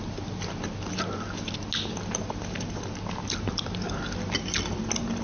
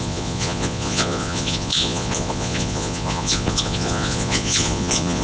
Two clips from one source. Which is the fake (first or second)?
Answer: second